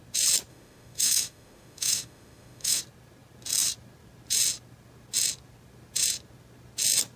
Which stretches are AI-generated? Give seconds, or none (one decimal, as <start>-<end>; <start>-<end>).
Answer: 0.5-2.8